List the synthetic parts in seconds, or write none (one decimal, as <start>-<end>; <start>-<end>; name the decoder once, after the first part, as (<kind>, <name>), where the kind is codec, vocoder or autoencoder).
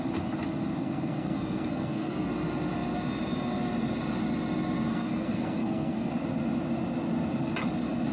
0.8-2.3 (codec, SNAC); 4.9-6.1